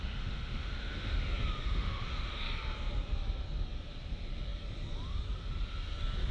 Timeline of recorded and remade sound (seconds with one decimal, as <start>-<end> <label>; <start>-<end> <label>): 0.0-1.2 remade; 1.2-1.6 recorded; 1.6-2.4 remade; 2.4-6.3 recorded